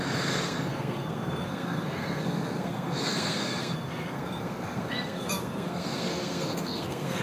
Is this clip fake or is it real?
fake